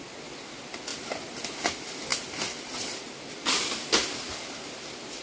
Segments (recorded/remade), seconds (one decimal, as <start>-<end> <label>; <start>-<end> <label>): 0.0-5.2 recorded